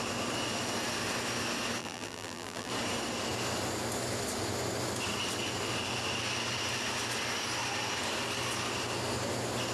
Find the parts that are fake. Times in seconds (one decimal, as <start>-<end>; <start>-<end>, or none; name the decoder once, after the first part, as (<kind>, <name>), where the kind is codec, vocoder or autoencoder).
1.8-2.7 (vocoder, BigVGAN v2)